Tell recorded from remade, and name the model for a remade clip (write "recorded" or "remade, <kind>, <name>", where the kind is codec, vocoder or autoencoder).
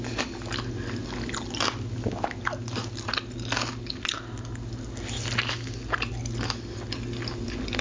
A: recorded